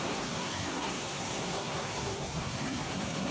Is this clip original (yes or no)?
no